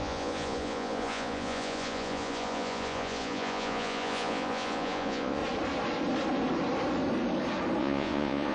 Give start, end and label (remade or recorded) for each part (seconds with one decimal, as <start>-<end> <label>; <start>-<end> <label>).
0.0-5.4 remade; 5.4-7.8 recorded; 7.8-8.5 remade

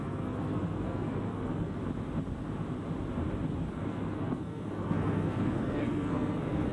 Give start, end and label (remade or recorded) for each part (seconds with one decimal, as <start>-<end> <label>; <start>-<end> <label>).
0.0-1.8 remade; 1.8-3.7 recorded; 3.7-6.7 remade

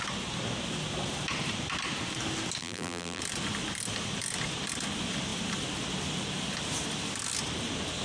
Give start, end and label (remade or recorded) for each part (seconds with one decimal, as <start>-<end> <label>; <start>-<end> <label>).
0.0-2.6 recorded; 2.6-3.2 remade; 3.2-8.0 recorded

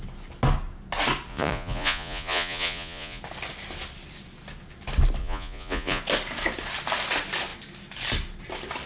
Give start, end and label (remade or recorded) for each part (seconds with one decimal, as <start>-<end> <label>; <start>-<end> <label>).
0.0-1.3 recorded; 1.3-3.2 remade; 3.2-5.2 recorded; 5.2-6.0 remade; 6.0-8.9 recorded

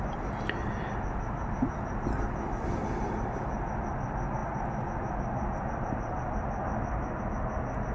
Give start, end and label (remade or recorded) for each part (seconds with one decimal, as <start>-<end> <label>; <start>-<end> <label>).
0.0-7.9 recorded

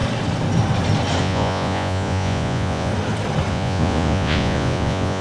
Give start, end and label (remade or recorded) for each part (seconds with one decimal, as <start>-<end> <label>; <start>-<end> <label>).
0.0-1.2 recorded; 1.2-2.9 remade; 2.9-3.5 recorded; 3.5-5.2 remade